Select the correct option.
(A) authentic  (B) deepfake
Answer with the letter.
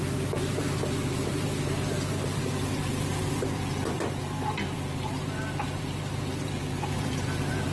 B